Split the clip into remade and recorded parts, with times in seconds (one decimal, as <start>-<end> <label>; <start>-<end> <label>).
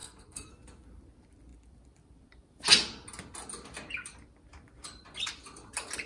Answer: 0.0-0.5 remade; 0.5-6.1 recorded